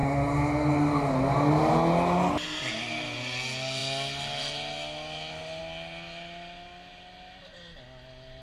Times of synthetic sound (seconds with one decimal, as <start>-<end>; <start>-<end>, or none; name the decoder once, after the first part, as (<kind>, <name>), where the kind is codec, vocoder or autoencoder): none